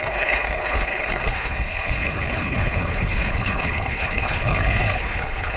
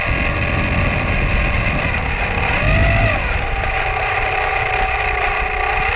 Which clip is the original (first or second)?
second